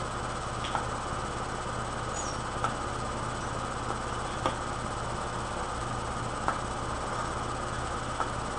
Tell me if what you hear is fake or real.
real